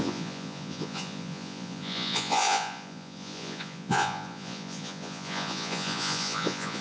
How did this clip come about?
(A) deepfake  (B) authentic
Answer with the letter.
A